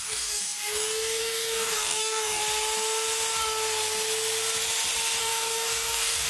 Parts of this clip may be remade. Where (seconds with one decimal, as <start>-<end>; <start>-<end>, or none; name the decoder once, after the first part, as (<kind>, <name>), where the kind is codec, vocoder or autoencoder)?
0.0-2.4 (codec, DAC); 5.2-6.3